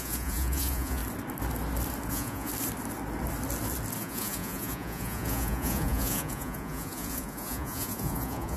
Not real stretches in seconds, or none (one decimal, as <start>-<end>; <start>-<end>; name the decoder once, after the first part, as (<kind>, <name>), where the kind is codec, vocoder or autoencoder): 0.0-1.0 (vocoder, Vocos); 2.1-2.5; 4.0-8.6